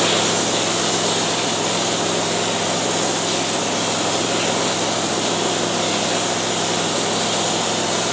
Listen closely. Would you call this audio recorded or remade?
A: remade